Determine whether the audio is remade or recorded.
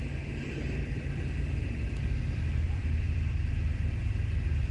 remade